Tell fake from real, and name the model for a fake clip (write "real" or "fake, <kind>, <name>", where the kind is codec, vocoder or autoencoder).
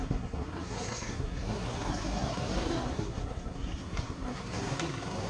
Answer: fake, codec, SNAC